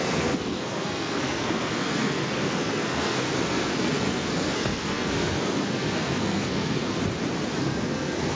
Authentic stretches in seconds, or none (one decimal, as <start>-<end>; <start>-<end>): 7.0-7.6